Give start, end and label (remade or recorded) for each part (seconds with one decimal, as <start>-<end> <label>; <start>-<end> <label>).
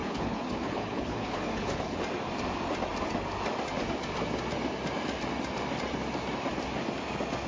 0.0-2.0 remade; 2.0-7.5 recorded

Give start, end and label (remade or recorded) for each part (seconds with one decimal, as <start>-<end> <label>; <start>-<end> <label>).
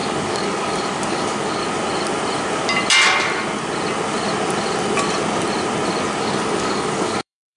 0.0-1.6 remade; 1.6-6.2 recorded; 6.2-7.6 remade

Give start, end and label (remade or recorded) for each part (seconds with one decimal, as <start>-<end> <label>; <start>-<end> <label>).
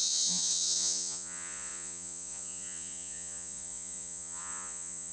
0.0-5.1 remade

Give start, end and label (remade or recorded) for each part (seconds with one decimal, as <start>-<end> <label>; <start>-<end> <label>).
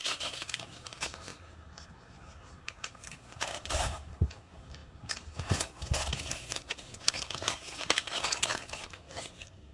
0.0-9.7 remade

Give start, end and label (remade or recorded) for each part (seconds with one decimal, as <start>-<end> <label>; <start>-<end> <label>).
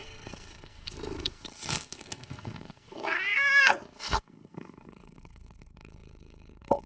0.0-6.9 remade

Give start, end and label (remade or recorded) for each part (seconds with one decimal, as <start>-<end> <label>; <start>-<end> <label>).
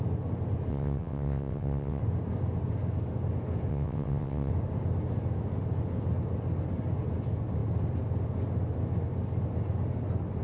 0.0-0.7 recorded; 0.7-2.0 remade; 2.0-3.7 recorded; 3.7-4.5 remade; 4.5-10.4 recorded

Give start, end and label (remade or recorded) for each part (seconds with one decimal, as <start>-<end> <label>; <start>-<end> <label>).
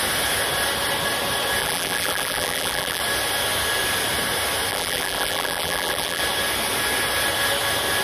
0.0-1.6 recorded; 1.6-3.0 remade; 3.0-4.7 recorded; 4.7-6.2 remade; 6.2-8.0 recorded